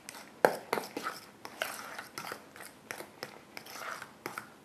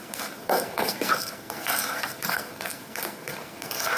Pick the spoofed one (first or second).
second